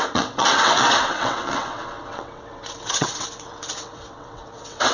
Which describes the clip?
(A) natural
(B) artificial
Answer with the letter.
B